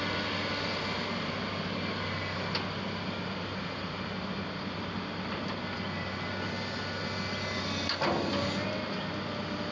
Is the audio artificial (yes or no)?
no